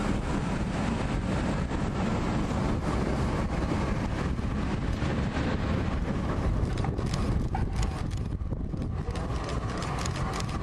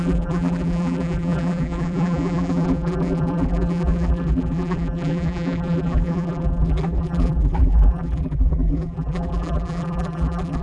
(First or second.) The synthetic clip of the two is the second